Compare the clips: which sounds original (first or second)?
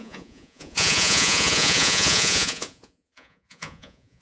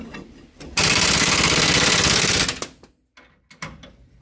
second